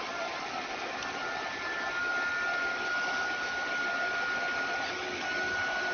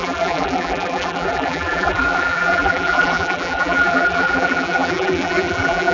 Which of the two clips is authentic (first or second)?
first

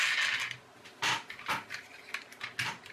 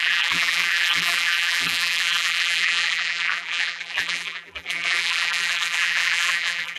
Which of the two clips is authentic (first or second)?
first